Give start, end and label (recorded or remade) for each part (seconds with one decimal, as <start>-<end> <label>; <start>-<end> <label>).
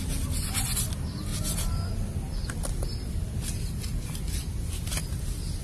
0.0-5.6 recorded